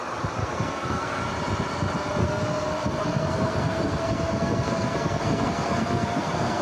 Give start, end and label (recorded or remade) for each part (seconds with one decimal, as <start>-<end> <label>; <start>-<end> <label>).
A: 0.0-0.4 recorded; 0.4-1.2 remade; 1.2-2.2 recorded; 2.2-6.6 remade